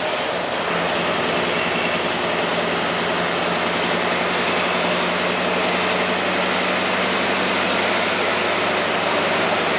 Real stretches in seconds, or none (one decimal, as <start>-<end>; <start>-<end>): 0.0-9.8